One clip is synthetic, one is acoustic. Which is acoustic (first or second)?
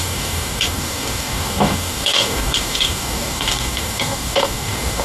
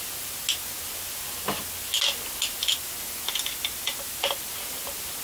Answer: second